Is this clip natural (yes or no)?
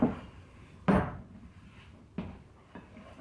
yes